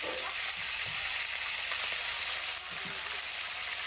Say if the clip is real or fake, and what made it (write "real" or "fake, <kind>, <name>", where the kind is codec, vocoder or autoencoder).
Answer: real